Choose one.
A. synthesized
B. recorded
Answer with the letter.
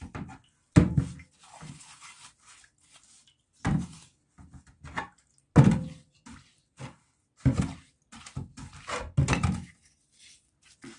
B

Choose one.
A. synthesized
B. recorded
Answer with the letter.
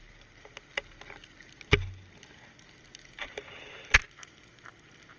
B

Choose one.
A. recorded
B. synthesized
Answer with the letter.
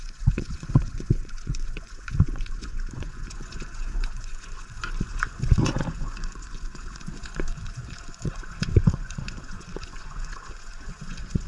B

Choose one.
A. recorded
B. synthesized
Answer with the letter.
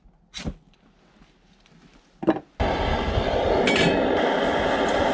A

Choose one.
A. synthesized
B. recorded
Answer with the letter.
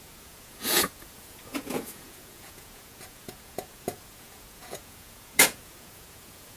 A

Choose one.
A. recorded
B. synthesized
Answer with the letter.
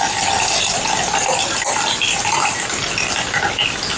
A